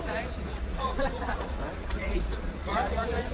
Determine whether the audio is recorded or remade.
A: remade